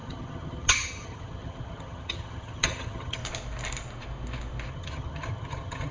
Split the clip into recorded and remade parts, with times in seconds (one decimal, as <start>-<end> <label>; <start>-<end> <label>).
0.0-3.2 remade; 3.2-4.7 recorded; 4.7-5.9 remade

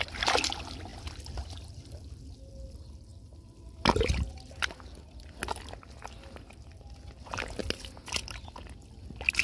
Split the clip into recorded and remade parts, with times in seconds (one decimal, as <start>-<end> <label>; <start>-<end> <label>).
0.0-9.4 recorded

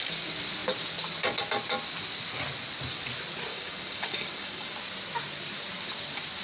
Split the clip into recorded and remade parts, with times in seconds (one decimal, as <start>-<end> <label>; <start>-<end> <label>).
0.0-3.5 recorded; 3.5-4.7 remade; 4.7-6.4 recorded